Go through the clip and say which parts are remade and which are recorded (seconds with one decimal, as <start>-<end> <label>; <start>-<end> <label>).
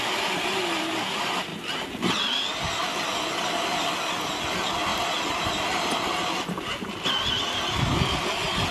0.0-8.7 recorded